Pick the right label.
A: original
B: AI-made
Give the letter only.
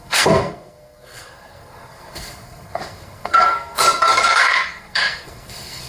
B